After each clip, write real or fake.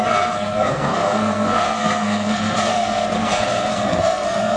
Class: fake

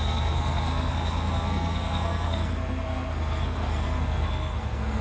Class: fake